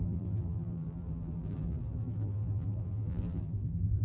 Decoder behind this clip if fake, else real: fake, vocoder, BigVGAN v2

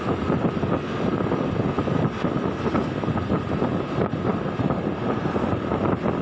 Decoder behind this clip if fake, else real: real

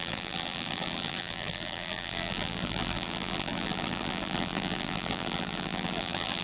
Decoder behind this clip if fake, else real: fake, vocoder, BigVGAN v2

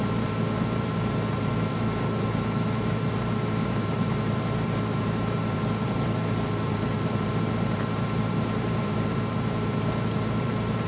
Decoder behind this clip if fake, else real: fake, vocoder, BigVGAN v2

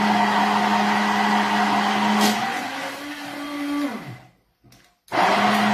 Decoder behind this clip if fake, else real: real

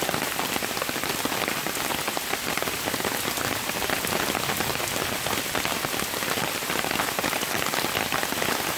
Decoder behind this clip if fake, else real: real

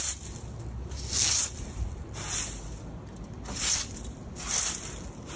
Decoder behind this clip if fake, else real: real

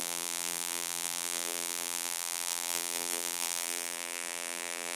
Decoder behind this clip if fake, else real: fake, vocoder, BigVGAN v2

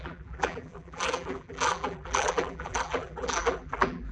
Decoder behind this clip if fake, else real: fake, vocoder, BigVGAN v2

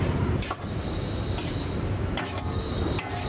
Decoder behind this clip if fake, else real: fake, vocoder, BigVGAN v2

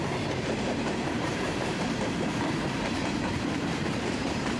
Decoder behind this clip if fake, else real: fake, vocoder, BigVGAN v2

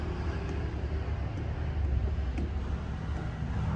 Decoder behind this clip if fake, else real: real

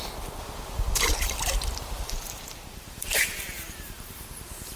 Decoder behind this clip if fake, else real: fake, vocoder, BigVGAN v2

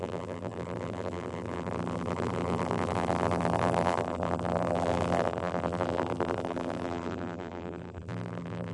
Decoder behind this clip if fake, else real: fake, vocoder, BigVGAN v2